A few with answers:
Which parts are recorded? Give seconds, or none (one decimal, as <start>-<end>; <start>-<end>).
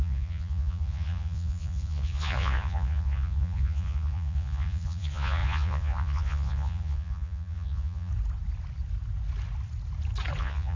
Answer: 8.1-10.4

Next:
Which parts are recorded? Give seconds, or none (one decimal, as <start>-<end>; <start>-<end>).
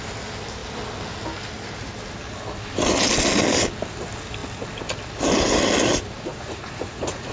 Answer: 0.0-6.3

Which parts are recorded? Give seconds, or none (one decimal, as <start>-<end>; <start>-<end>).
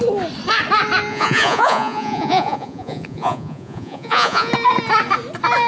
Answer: 0.0-1.1; 4.5-5.7